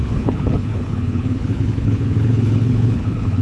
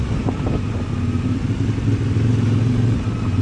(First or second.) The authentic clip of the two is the second